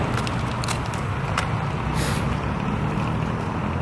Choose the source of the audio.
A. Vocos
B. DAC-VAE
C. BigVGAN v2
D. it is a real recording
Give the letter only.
D